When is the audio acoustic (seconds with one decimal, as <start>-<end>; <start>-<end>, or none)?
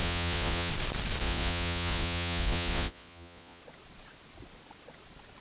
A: 0.7-1.2; 3.6-5.4